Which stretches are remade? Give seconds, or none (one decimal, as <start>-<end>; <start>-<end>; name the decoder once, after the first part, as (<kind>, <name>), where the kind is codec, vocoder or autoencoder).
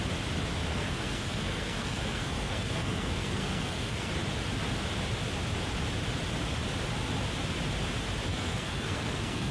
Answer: 0.7-4.1 (codec, SNAC); 8.3-9.5